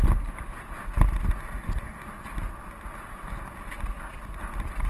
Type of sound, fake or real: real